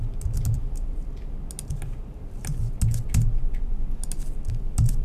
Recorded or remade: recorded